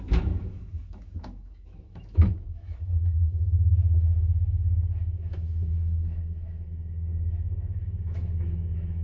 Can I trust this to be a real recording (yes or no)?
no